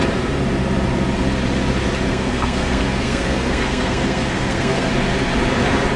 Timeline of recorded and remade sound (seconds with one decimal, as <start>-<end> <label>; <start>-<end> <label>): 0.0-2.1 recorded; 2.1-4.9 remade; 4.9-6.0 recorded